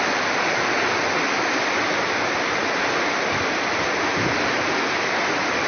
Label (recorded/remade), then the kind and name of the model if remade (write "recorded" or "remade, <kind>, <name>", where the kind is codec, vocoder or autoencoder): recorded